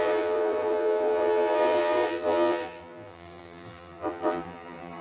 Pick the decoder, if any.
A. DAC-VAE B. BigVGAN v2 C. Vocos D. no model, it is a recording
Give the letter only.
B